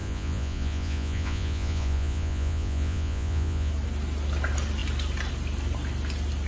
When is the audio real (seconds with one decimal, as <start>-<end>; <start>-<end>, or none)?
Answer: 3.7-6.5